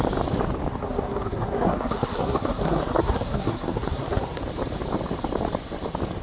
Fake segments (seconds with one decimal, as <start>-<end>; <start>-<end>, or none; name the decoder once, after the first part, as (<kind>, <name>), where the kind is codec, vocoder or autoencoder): 0.7-4.4 (codec, SNAC)